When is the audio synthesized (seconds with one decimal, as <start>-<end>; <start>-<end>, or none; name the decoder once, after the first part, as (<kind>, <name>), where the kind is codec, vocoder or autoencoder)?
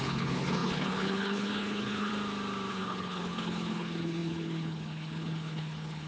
0.0-2.1 (codec, HILCodec); 2.7-6.1